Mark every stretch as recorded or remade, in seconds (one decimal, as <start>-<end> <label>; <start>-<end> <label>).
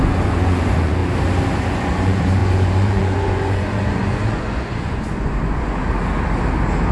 0.0-1.0 remade; 1.0-1.6 recorded; 1.6-5.8 remade; 5.8-6.9 recorded